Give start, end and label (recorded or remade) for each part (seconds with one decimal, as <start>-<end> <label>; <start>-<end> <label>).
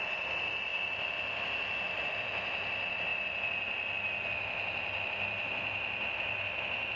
0.0-7.0 recorded